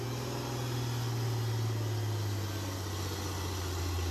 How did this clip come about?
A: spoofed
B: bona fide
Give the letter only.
B